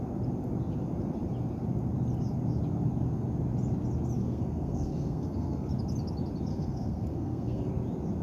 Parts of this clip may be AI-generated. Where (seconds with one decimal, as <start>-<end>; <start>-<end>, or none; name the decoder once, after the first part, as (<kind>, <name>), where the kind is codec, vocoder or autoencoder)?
4.2-5.7 (codec, SNAC); 6.5-7.7